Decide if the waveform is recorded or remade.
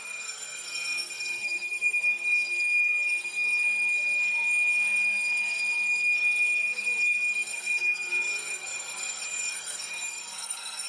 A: remade